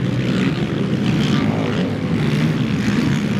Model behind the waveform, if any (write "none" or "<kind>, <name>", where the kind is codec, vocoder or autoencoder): none